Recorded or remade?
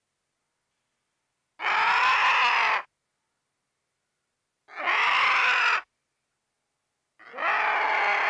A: recorded